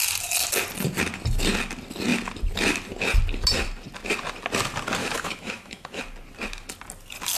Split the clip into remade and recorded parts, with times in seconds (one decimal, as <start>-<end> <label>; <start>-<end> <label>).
0.0-5.0 recorded; 5.0-6.0 remade; 6.0-7.4 recorded

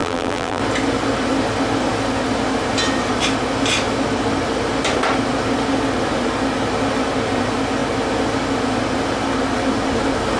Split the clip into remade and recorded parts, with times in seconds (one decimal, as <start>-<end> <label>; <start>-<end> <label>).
0.0-0.6 remade; 0.6-10.4 recorded

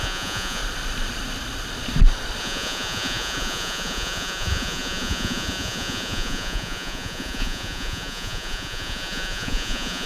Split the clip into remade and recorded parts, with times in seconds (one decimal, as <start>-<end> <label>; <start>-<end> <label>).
0.0-0.6 remade; 0.6-2.4 recorded; 2.4-10.1 remade

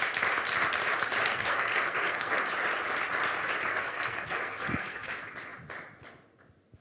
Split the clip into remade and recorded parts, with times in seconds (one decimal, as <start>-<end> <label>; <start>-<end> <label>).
0.0-1.3 recorded; 1.3-2.4 remade; 2.4-3.7 recorded; 3.7-5.1 remade; 5.1-6.8 recorded

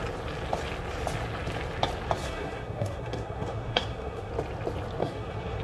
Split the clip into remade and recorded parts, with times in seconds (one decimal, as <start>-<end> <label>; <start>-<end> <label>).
0.0-2.2 recorded; 2.2-4.3 remade; 4.3-5.0 recorded; 5.0-5.6 remade

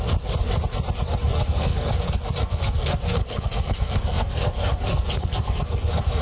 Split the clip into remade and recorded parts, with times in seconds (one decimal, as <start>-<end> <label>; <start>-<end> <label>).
0.0-1.3 recorded; 1.3-2.0 remade; 2.0-2.4 recorded; 2.4-6.2 remade